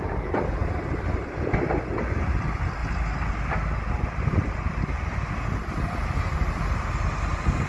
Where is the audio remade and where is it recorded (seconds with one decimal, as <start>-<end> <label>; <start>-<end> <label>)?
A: 0.0-7.7 recorded